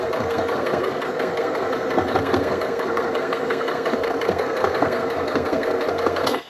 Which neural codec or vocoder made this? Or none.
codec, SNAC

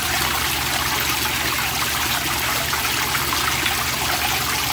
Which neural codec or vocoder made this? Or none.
none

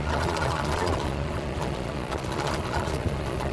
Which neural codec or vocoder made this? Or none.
vocoder, Vocos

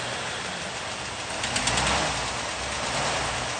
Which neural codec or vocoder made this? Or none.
none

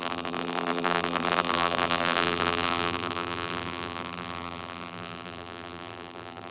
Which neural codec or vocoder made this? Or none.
vocoder, BigVGAN v2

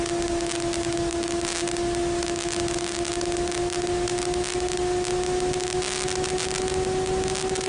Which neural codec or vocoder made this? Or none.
none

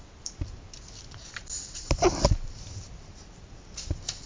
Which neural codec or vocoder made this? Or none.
none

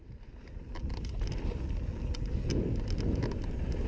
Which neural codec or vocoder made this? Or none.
none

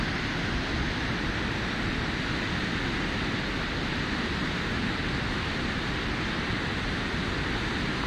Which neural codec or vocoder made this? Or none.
none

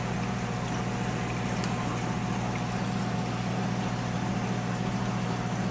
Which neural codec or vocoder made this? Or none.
none